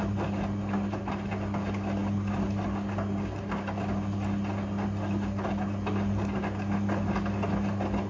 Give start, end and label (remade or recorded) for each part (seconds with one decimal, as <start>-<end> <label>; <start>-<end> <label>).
0.0-8.1 recorded